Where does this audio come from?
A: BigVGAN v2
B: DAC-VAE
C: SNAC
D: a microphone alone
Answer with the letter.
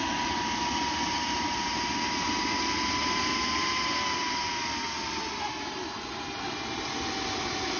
D